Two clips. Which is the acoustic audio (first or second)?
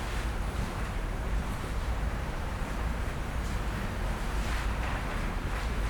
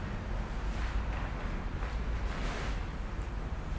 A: second